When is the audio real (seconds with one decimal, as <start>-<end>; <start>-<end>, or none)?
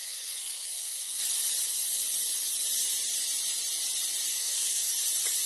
1.2-4.3; 4.9-5.5